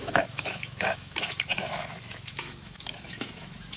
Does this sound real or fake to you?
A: fake